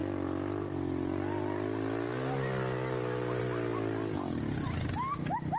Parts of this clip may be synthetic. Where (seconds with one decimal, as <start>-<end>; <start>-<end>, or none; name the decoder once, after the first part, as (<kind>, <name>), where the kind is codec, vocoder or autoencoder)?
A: none